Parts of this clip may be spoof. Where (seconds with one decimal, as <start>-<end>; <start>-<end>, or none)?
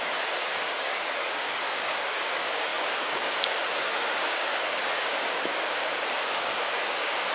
0.0-7.3